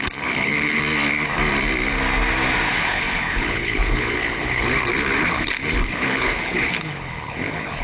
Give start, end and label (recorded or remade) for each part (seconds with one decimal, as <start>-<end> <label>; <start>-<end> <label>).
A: 0.0-0.8 remade; 0.8-2.7 recorded; 2.7-7.8 remade